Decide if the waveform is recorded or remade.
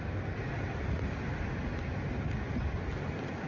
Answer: recorded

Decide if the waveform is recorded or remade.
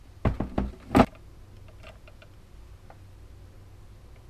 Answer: recorded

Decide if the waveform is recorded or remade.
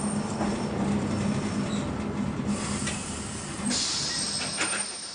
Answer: recorded